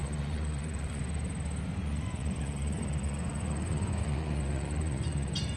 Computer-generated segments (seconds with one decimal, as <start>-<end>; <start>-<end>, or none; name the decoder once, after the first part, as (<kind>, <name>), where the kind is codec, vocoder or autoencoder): 0.0-1.0 (vocoder, Vocos); 1.8-5.6